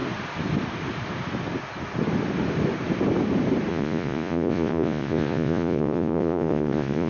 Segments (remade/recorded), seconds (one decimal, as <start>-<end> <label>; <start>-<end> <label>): 0.0-3.7 recorded; 3.7-7.1 remade